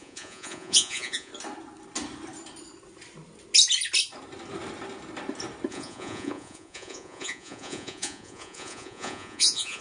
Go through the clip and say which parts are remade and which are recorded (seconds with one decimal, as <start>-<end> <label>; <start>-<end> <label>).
0.0-1.3 remade; 1.3-5.7 recorded; 5.7-9.8 remade